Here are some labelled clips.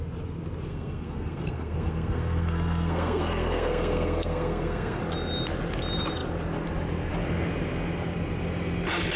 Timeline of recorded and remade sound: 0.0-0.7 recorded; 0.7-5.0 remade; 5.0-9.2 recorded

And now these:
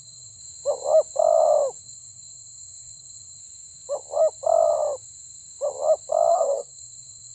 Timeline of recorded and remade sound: 0.0-0.4 remade; 0.4-1.8 recorded; 1.8-3.4 remade; 3.4-6.3 recorded; 6.3-7.3 remade

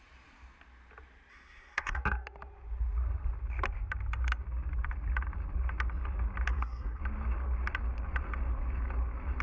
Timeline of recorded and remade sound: 0.0-1.3 recorded; 1.3-2.0 remade; 2.0-6.5 recorded; 6.5-7.0 remade; 7.0-9.4 recorded

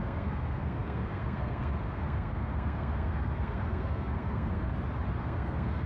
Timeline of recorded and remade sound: 0.0-4.7 remade; 4.7-5.2 recorded; 5.2-5.9 remade

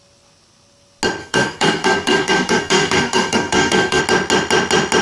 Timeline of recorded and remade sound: 0.0-1.2 recorded; 1.2-4.0 remade; 4.0-5.0 recorded

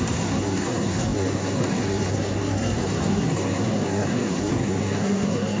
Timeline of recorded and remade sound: 0.0-5.6 remade

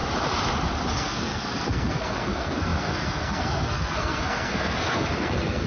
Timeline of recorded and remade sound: 0.0-0.9 recorded; 0.9-5.7 remade